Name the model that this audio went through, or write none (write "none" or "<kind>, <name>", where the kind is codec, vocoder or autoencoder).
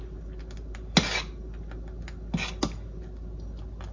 none